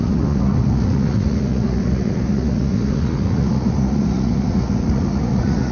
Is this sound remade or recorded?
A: remade